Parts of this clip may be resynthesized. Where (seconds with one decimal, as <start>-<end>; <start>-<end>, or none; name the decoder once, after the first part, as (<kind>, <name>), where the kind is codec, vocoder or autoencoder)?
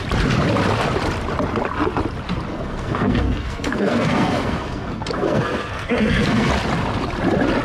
2.5-6.5 (codec, SNAC)